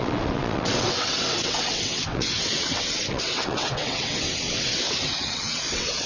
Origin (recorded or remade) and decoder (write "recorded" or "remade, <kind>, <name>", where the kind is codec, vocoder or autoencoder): remade, vocoder, WaveNeXt